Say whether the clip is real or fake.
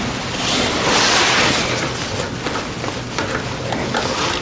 real